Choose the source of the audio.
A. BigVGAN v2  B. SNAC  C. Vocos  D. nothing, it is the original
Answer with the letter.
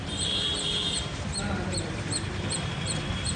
A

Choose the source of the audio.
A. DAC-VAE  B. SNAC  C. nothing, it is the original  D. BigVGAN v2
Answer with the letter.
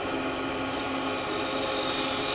C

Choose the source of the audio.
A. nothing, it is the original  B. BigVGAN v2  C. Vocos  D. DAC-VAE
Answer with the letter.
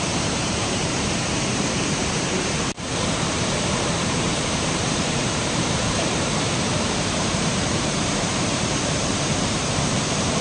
B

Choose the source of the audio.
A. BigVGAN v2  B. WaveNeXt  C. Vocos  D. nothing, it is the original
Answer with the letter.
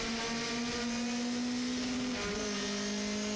D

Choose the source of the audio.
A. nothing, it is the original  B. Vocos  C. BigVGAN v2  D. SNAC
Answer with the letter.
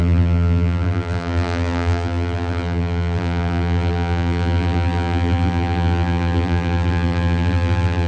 C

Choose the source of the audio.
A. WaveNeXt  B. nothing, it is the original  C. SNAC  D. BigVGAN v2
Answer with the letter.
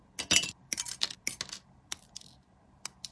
B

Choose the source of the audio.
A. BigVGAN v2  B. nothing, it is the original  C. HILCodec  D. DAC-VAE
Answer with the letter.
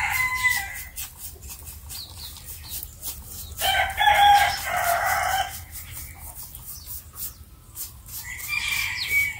B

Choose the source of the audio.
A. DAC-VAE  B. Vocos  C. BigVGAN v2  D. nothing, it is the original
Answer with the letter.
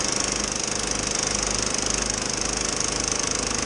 D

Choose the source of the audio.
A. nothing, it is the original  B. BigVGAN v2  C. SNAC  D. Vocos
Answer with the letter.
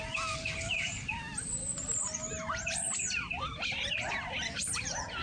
B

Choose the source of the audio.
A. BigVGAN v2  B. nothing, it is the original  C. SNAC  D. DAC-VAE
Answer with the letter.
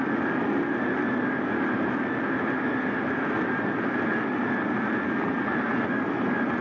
A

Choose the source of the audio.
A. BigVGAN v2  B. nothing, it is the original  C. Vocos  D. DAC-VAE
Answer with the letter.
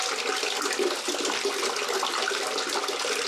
B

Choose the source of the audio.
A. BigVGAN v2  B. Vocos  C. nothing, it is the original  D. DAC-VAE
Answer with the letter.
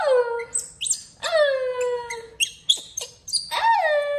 C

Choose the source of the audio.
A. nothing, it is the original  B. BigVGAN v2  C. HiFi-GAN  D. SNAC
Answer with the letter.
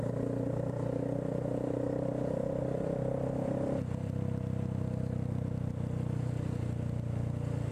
A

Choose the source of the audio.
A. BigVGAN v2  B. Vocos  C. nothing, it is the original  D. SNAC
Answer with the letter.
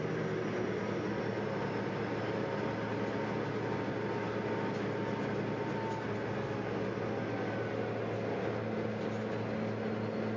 C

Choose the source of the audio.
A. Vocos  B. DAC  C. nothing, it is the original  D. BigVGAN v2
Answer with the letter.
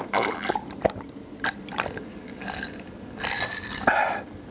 D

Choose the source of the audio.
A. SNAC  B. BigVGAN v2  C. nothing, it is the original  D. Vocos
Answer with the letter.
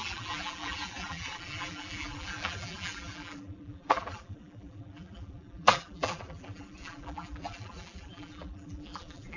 B